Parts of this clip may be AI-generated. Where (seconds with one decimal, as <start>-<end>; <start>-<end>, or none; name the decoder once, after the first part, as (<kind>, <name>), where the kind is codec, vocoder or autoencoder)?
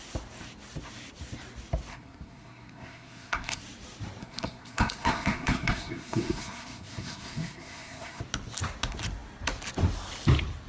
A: 1.9-3.6 (codec, SNAC); 4.2-8.2